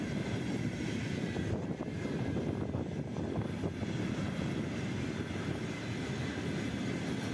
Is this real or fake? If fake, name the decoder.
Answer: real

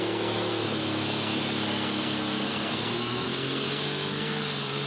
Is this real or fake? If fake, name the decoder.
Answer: fake, codec, SNAC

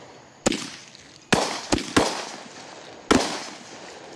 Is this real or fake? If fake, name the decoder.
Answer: real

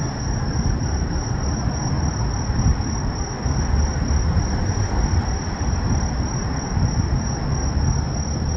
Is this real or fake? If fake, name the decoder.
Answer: real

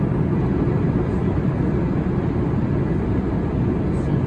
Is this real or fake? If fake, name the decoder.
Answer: real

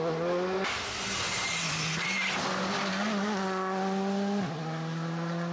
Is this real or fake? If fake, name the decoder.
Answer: real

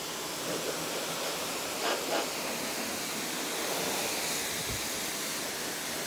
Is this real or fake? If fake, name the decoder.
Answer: real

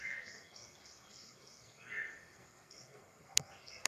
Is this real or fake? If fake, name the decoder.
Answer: fake, codec, SNAC